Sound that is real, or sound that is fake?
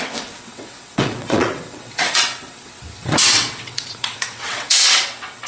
fake